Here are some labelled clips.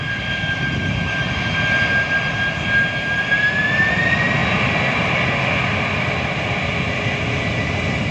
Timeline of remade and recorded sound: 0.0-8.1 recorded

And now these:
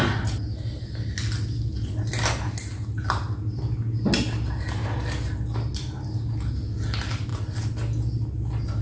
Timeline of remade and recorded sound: 0.0-8.8 recorded

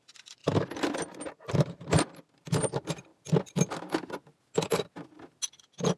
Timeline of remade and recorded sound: 0.0-6.0 recorded